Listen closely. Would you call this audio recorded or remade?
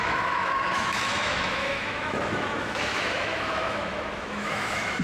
remade